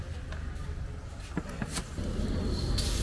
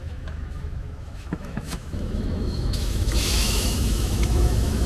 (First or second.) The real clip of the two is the first